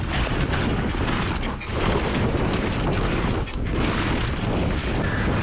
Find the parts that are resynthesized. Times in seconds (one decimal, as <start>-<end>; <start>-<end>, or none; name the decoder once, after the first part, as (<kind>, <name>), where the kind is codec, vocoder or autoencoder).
1.7-3.0 (vocoder, BigVGAN v2)